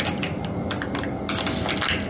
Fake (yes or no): no